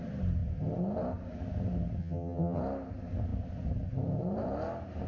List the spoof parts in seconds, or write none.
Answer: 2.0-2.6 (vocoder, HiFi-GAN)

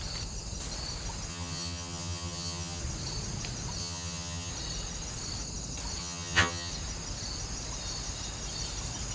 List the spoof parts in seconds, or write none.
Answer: 1.3-2.8 (vocoder, HiFi-GAN); 3.8-4.5; 6.0-6.7

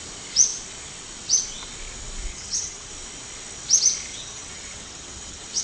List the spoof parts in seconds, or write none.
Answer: 2.3-2.9 (vocoder, HiFi-GAN); 4.1-5.6